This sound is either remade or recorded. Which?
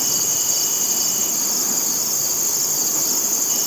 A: recorded